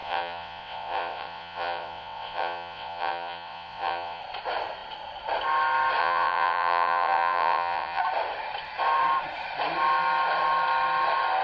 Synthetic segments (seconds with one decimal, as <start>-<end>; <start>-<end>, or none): 0.0-4.2; 6.0-8.0